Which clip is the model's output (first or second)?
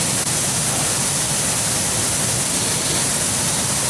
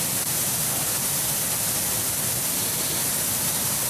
second